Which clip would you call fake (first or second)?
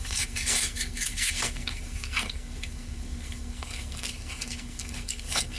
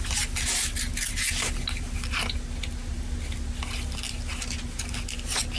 first